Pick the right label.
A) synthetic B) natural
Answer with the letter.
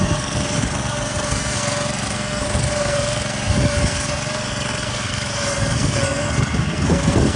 A